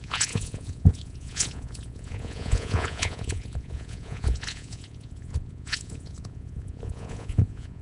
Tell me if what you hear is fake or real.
fake